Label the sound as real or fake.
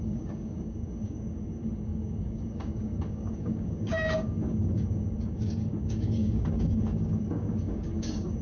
fake